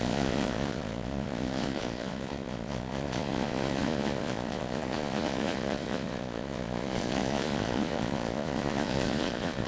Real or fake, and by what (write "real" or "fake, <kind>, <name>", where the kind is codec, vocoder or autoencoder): fake, vocoder, Vocos